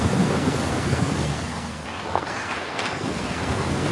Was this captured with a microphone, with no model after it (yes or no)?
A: no